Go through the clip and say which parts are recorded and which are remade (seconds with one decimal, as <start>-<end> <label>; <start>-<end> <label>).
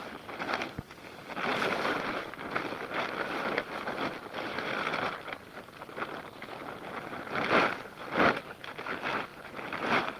0.0-1.5 remade; 1.5-3.3 recorded; 3.3-5.9 remade; 5.9-8.6 recorded; 8.6-10.2 remade